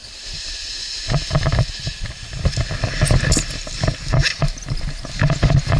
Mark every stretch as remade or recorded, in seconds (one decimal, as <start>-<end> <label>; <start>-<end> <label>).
0.0-5.8 recorded